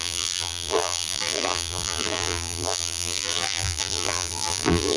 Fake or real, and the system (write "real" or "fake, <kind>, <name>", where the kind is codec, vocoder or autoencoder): fake, vocoder, BigVGAN v2